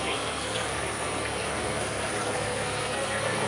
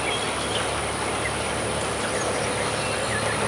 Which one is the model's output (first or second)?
first